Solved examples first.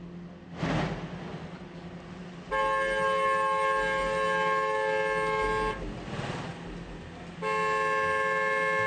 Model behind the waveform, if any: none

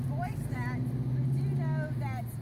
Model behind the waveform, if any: none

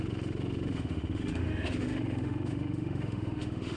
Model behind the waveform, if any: autoencoder, DAC-VAE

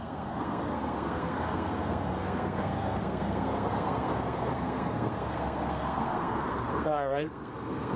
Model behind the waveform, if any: codec, SNAC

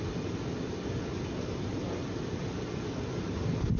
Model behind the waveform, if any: none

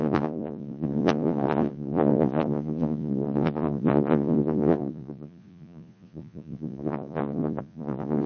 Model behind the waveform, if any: vocoder, Vocos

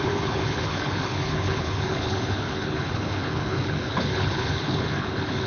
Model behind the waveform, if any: codec, HILCodec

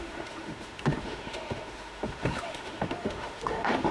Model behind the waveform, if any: autoencoder, DAC-VAE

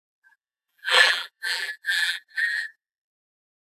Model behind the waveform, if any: vocoder, BigVGAN v2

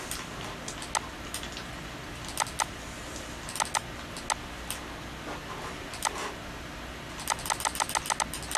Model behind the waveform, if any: none